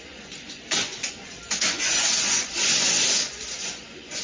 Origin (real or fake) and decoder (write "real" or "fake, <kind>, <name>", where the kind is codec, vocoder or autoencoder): fake, vocoder, Vocos